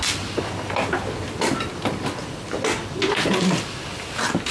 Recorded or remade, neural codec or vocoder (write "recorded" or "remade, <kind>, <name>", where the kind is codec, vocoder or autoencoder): recorded